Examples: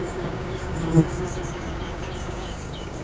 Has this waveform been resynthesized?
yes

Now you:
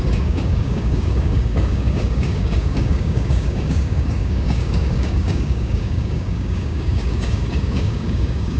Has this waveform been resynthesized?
yes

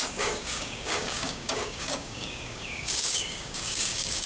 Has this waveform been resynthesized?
yes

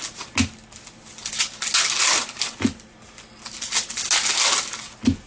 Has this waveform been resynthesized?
no